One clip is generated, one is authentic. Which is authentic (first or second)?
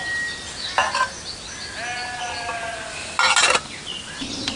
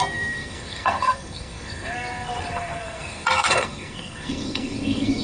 first